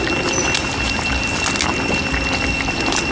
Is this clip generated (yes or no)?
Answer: no